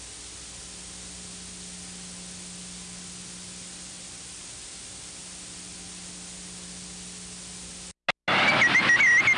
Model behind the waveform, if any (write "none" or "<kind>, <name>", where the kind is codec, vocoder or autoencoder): none